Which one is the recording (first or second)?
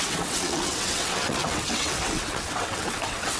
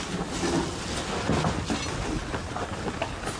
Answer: second